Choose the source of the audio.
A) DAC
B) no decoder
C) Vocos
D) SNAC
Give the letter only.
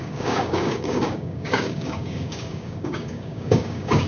A